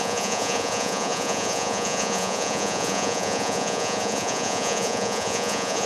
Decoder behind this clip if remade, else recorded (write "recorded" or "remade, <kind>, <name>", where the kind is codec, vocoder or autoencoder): remade, vocoder, Vocos